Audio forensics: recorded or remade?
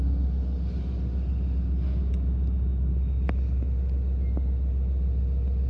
recorded